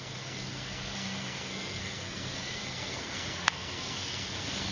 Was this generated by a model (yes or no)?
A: yes